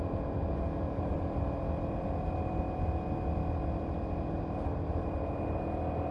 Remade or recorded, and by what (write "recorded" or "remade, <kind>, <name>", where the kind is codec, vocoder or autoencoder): recorded